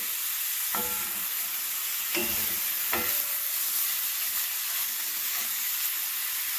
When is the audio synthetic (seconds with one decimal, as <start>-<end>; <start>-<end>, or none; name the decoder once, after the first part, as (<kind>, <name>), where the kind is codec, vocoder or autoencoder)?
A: 4.8-5.7 (codec, DAC)